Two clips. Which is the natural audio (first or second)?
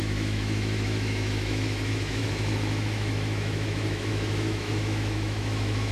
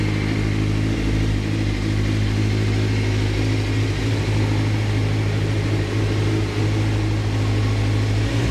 second